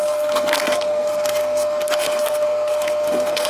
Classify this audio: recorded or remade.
remade